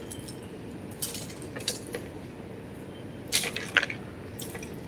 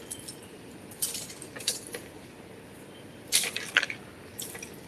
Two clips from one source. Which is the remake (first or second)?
second